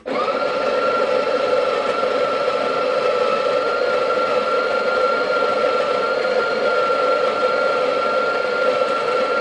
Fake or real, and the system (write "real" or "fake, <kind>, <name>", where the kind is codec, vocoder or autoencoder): real